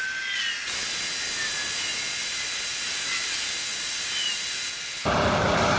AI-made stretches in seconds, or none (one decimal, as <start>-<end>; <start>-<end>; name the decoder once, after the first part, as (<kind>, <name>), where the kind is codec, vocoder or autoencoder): none